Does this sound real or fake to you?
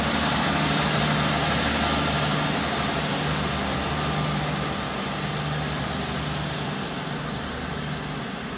real